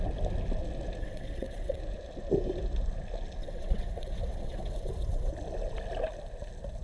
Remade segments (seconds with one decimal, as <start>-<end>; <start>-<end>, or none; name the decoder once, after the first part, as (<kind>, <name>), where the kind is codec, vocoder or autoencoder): 1.0-1.8 (vocoder, WaveNeXt); 3.4-5.3